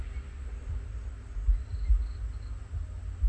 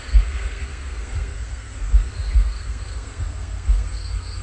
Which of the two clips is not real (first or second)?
second